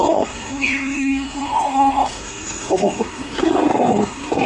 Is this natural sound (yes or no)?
no